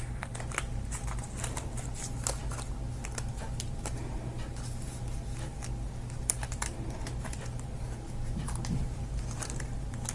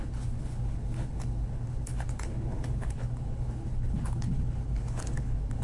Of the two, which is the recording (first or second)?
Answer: first